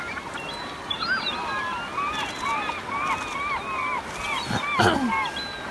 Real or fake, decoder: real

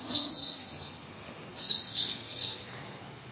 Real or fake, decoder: fake, codec, SNAC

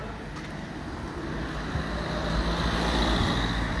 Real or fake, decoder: real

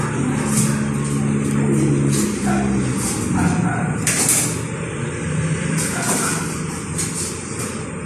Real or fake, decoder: real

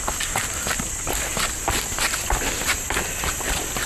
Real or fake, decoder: real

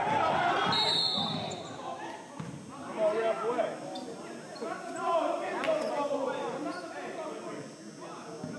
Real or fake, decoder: real